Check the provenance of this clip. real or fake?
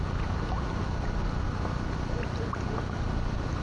real